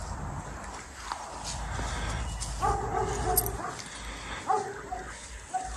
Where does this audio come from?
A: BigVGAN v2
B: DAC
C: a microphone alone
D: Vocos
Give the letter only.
C